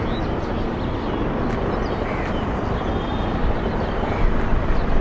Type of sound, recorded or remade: remade